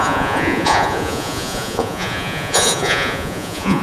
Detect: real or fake fake